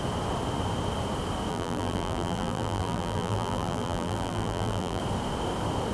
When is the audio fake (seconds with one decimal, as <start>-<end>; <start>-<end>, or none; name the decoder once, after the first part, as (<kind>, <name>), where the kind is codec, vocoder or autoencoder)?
1.5-5.0 (vocoder, BigVGAN v2)